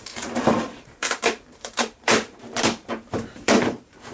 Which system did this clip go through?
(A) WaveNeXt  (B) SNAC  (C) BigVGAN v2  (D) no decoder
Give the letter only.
C